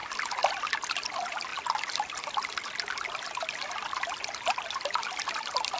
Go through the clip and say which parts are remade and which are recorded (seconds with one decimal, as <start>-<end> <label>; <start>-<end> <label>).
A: 0.0-5.8 recorded